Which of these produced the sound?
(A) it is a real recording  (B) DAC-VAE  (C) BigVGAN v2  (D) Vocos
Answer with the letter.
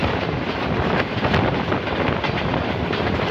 A